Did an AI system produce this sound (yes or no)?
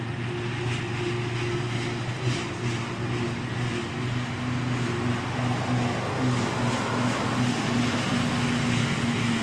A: no